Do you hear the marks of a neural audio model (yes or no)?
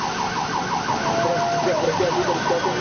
no